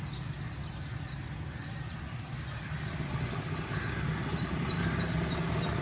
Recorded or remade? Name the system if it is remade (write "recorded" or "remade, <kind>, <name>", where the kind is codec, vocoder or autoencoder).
recorded